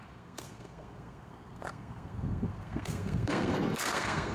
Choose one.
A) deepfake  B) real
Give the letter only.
A